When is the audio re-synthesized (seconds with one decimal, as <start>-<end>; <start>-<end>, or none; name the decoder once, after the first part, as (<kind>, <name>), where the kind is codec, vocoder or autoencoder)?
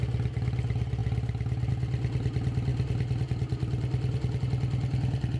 none